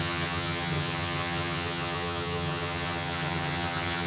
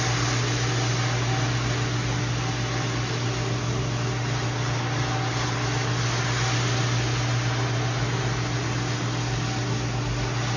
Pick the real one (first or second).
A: second